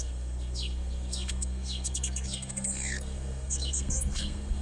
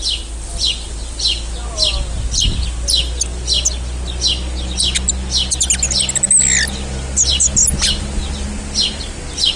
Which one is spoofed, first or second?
first